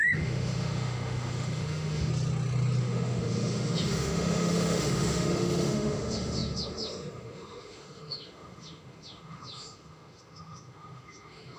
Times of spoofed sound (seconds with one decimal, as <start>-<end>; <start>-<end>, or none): 0.0-2.1; 2.8-11.6